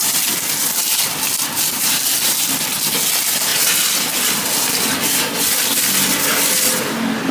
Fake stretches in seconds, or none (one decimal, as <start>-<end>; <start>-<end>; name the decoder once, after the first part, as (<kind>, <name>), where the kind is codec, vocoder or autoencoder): none

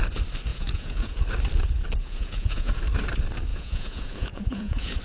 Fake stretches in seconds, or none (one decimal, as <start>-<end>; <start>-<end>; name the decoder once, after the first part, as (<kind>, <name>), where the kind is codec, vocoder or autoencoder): 0.5-1.2 (vocoder, Vocos); 2.0-2.7; 3.5-5.0

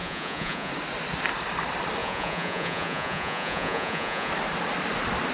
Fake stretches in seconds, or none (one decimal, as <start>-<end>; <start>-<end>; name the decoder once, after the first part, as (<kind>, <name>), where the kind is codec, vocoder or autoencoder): 0.0-0.7 (vocoder, Vocos); 2.0-4.3

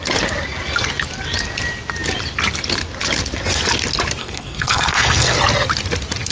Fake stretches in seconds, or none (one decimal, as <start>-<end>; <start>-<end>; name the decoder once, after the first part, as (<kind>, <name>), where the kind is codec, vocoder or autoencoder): 4.2-5.4 (codec, SNAC)

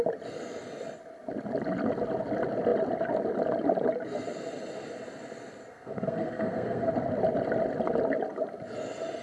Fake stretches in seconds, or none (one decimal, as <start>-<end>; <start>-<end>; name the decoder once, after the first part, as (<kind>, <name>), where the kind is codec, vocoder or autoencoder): 5.7-6.9 (codec, SNAC)